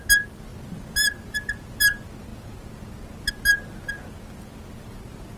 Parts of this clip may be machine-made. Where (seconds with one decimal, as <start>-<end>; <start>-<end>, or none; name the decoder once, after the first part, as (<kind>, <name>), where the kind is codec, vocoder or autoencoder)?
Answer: none

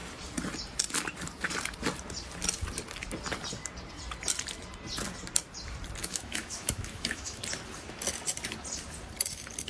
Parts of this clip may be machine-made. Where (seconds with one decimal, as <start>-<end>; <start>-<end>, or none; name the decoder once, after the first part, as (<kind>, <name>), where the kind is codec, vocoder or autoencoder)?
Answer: 6.0-7.4 (autoencoder, DAC-VAE)

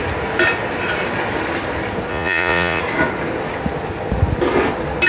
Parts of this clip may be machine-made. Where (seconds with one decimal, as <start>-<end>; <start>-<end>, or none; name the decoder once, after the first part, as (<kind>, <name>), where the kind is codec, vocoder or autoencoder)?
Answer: 2.1-2.8 (vocoder, Vocos)

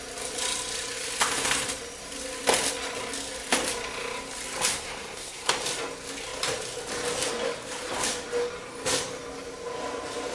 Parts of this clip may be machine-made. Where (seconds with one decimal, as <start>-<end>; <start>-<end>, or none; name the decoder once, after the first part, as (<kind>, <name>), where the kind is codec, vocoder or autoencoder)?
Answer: 4.7-5.5 (codec, SNAC)

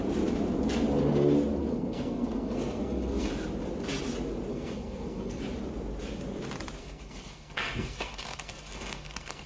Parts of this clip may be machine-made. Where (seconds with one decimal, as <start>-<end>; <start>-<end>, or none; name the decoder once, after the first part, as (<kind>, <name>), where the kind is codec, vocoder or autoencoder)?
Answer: 1.6-3.3 (codec, SNAC); 4.5-5.4; 6.8-9.5

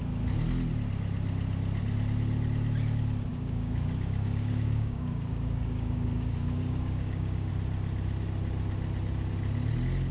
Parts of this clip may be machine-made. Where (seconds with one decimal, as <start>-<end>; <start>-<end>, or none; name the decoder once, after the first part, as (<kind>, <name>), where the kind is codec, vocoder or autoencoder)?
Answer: 3.3-7.5 (codec, DAC)